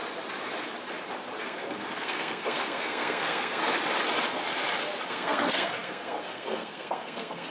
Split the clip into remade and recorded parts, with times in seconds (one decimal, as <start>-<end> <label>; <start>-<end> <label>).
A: 0.0-1.4 recorded; 1.4-3.6 remade; 3.6-5.1 recorded; 5.1-7.5 remade